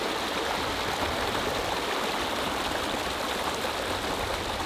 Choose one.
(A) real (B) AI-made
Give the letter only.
A